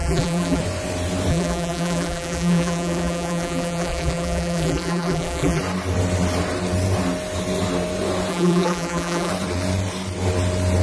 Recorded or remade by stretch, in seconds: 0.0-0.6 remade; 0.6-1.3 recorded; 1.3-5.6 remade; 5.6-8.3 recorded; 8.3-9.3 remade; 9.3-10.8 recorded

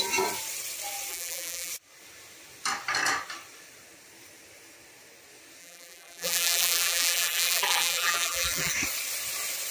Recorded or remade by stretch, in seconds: 0.0-1.1 recorded; 1.1-1.7 remade; 1.7-5.6 recorded; 5.6-8.7 remade; 8.7-9.7 recorded

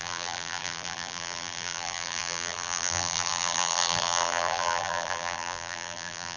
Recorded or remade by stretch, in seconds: 0.0-6.4 remade

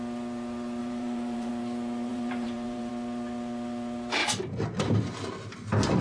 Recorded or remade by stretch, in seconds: 0.0-0.8 recorded; 0.8-1.5 remade; 1.5-2.1 recorded; 2.1-2.9 remade; 2.9-4.2 recorded; 4.2-5.1 remade; 5.1-6.0 recorded

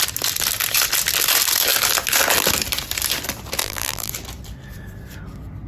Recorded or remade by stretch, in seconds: 0.0-3.6 recorded; 3.6-4.1 remade; 4.1-5.7 recorded